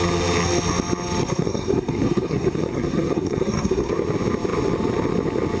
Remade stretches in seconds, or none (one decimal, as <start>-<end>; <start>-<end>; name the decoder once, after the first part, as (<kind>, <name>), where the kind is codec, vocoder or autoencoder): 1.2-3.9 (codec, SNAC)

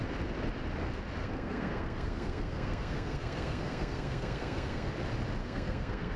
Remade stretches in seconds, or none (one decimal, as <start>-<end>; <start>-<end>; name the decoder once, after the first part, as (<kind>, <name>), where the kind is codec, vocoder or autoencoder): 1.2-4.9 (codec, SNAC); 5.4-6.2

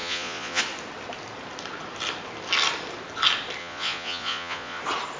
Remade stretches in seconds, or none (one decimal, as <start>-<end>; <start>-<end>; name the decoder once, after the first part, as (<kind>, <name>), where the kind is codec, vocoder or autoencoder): 0.0-0.6 (vocoder, Vocos); 3.6-4.8